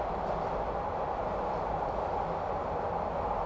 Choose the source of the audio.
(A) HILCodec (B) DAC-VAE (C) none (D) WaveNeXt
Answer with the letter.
C